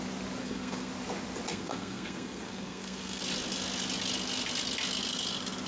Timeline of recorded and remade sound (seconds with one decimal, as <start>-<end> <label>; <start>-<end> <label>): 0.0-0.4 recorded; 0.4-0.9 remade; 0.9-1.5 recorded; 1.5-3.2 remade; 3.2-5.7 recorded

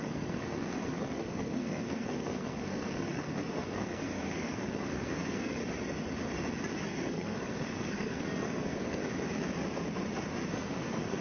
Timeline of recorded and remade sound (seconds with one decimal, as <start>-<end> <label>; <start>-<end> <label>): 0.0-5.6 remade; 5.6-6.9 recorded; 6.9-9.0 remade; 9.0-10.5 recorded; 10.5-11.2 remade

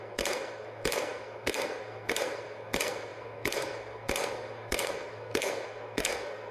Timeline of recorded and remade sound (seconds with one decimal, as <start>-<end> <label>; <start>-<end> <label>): 0.0-6.5 remade

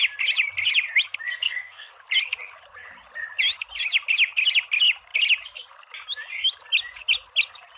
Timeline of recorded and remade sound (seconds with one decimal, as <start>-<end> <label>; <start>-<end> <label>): 0.0-1.3 recorded; 1.3-1.9 remade; 1.9-7.8 recorded